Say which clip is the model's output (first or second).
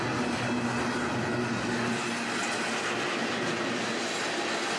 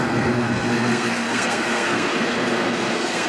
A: second